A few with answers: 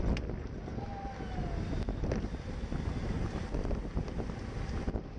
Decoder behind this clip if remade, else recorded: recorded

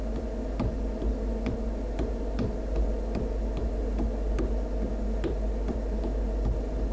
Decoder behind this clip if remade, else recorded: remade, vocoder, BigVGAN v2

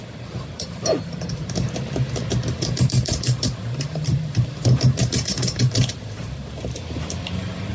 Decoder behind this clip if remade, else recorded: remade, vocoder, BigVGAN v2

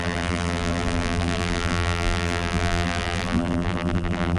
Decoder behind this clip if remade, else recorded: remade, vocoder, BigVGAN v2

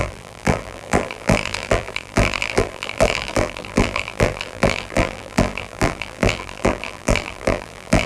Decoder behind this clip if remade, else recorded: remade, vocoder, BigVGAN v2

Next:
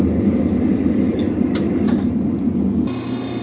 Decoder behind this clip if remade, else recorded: recorded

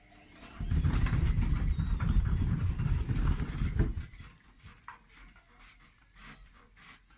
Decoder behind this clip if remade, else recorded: remade, vocoder, BigVGAN v2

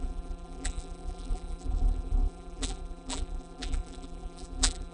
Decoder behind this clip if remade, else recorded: remade, vocoder, BigVGAN v2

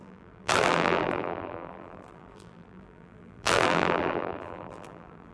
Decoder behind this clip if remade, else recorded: remade, vocoder, BigVGAN v2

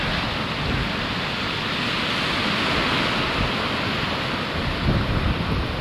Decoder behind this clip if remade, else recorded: recorded